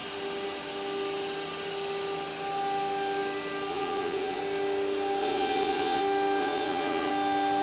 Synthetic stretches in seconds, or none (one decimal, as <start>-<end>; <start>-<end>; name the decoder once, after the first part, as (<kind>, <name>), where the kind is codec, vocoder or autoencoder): 3.7-4.4 (vocoder, Vocos); 5.2-6.0; 6.4-7.1